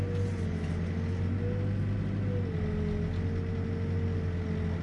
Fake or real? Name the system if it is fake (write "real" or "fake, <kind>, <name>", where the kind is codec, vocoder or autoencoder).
real